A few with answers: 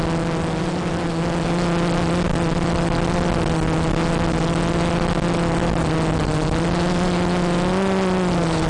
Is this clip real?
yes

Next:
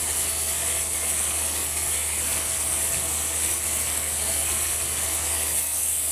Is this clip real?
no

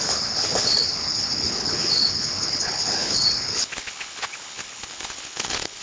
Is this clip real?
no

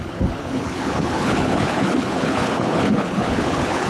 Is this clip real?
no